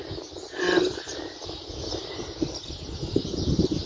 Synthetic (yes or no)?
no